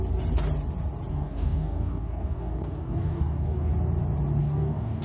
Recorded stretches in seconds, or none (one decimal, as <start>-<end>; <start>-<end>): 0.0-1.1; 3.7-4.4